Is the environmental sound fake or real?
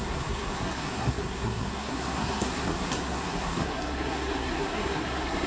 fake